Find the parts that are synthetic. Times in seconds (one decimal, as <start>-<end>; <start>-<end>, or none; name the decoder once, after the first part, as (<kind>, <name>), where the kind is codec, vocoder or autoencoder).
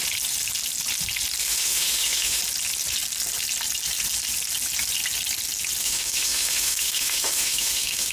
1.4-2.4 (autoencoder, DAC-VAE); 5.8-8.1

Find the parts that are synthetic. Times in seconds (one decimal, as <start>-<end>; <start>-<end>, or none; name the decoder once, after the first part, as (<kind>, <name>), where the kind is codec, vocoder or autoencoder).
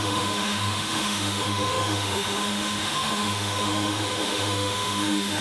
0.0-5.4 (autoencoder, DAC-VAE)